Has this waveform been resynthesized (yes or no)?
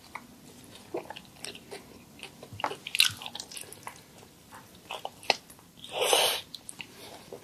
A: yes